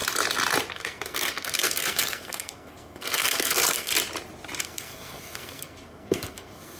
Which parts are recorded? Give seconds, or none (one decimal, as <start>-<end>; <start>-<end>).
0.0-0.7; 3.9-4.6